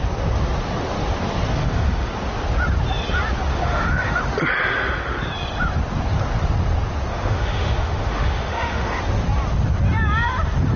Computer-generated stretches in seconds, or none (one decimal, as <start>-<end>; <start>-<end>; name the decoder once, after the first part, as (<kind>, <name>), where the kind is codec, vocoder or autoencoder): 1.6-2.1 (autoencoder, DAC-VAE); 3.5-4.2; 7.1-9.0